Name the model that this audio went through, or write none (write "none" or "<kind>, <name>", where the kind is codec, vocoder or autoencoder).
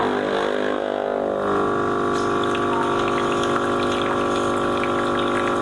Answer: none